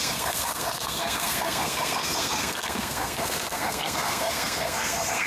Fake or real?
fake